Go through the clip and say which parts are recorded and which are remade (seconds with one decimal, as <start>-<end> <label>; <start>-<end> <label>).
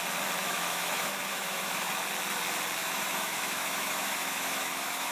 0.0-0.4 recorded; 0.4-1.9 remade; 1.9-2.8 recorded; 2.8-5.1 remade